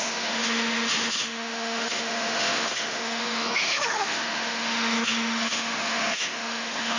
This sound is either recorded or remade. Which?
remade